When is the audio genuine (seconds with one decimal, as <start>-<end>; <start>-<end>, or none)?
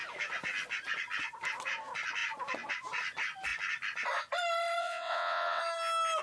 0.0-4.8; 5.6-6.2